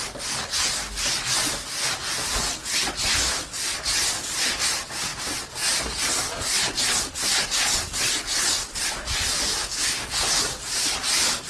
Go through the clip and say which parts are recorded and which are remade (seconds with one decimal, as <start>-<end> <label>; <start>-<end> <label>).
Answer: 0.0-9.6 recorded; 9.6-10.4 remade; 10.4-11.5 recorded